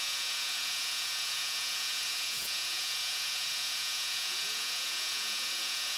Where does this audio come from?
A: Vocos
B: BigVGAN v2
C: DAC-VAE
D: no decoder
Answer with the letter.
A